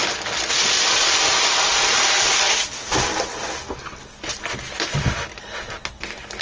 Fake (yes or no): no